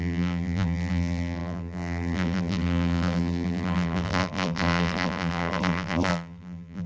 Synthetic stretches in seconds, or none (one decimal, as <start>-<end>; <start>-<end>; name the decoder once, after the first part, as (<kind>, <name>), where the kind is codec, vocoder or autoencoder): 0.0-6.9 (vocoder, BigVGAN v2)